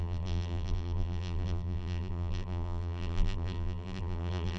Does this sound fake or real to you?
fake